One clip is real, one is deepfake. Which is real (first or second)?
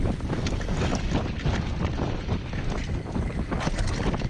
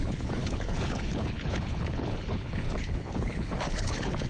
first